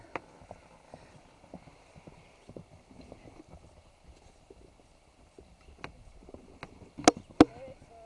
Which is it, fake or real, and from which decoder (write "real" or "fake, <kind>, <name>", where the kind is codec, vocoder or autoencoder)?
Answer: real